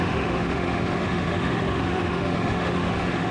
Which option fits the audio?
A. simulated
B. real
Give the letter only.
A